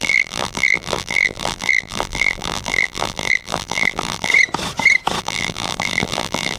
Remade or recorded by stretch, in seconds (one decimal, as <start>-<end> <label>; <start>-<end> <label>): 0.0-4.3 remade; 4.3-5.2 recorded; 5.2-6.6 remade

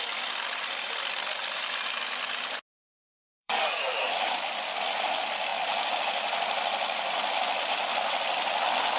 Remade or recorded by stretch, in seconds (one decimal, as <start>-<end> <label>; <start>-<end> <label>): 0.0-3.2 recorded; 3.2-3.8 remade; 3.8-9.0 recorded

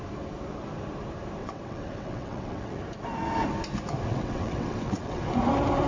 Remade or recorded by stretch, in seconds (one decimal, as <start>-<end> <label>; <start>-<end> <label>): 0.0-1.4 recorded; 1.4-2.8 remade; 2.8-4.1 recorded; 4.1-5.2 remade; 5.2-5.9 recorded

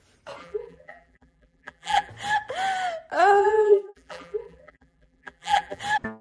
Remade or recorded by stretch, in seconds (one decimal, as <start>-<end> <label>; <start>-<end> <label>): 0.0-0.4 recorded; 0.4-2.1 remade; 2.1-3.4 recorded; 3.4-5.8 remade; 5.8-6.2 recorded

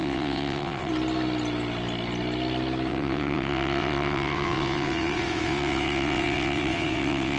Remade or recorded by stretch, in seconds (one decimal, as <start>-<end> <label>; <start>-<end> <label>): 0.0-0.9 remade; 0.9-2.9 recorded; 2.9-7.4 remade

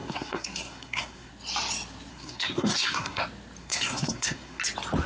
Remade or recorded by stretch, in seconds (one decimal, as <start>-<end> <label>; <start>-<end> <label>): 0.0-1.3 remade; 1.3-2.1 recorded; 2.1-3.2 remade; 3.2-3.6 recorded; 3.6-4.6 remade; 4.6-5.1 recorded